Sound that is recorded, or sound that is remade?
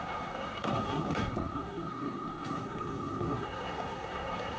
remade